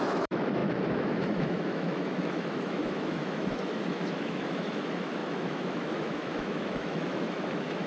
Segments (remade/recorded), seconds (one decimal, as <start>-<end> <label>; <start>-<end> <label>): 0.0-7.9 remade